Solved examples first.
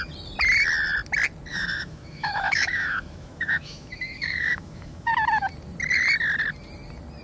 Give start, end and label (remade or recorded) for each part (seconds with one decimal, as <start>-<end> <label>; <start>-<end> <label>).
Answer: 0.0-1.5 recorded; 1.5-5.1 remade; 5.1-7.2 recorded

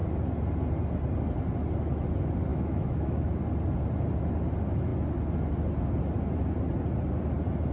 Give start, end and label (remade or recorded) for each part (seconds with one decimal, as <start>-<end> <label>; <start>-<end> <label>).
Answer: 0.0-2.5 recorded; 2.5-3.2 remade; 3.2-7.7 recorded

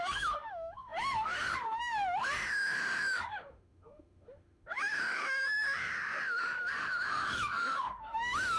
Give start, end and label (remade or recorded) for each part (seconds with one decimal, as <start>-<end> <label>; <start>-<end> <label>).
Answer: 0.0-8.6 remade

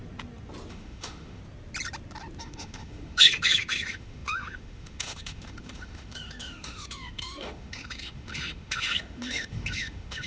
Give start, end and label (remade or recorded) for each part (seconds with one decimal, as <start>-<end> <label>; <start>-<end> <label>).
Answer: 0.0-0.7 recorded; 0.7-1.4 remade; 1.4-2.4 recorded; 2.4-10.3 remade